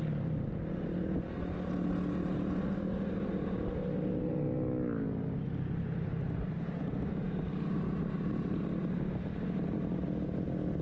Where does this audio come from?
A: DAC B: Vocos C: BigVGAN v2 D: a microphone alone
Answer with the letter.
D